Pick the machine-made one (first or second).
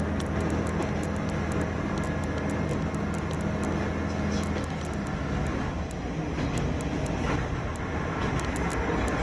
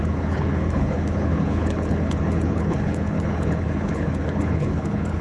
second